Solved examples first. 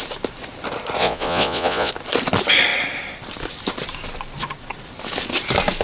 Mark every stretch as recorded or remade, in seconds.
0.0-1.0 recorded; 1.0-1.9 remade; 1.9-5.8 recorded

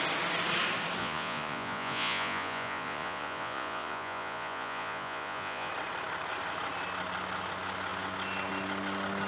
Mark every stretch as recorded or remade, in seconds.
0.0-1.0 recorded; 1.0-5.7 remade; 5.7-9.3 recorded